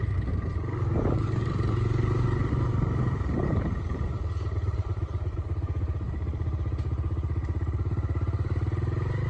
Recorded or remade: remade